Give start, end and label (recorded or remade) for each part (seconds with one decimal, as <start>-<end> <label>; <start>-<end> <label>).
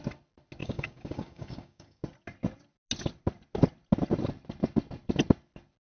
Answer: 0.0-0.6 recorded; 0.6-2.0 remade; 2.0-5.9 recorded